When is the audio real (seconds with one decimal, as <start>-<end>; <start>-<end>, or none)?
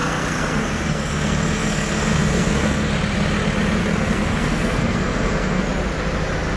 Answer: 2.9-3.8; 5.7-6.6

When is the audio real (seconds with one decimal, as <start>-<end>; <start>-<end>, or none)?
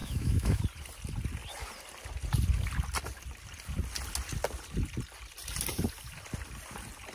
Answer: 0.6-7.1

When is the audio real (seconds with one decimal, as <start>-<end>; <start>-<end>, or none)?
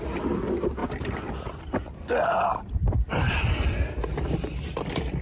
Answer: 0.0-0.8; 3.4-4.0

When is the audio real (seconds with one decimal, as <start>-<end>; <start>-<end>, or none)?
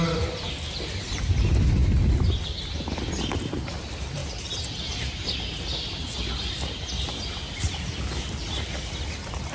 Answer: 0.0-9.5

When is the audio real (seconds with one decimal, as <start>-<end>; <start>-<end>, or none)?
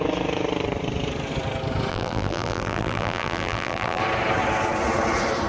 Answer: 0.0-1.9; 4.0-5.5